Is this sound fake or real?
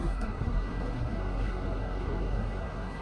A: fake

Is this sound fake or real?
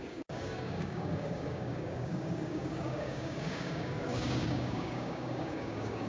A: fake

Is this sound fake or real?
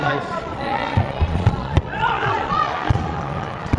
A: fake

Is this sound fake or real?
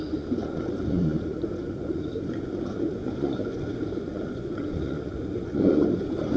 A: fake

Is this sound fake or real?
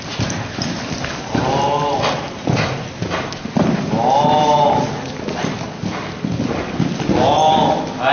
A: real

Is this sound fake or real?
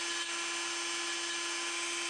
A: real